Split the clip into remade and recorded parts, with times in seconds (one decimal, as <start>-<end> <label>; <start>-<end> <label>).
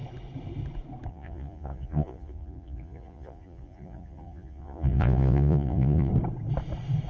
0.0-1.1 recorded; 1.1-6.1 remade; 6.1-7.1 recorded